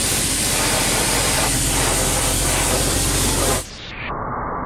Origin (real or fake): fake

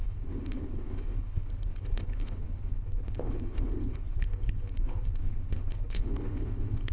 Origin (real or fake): fake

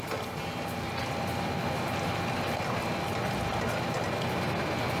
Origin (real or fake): real